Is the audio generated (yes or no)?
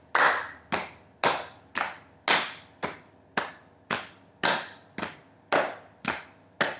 no